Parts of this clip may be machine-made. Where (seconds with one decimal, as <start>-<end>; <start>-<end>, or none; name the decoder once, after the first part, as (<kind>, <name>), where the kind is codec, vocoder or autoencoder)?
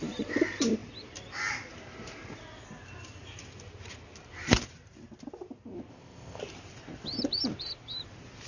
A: 5.9-6.4 (codec, ZipCodec)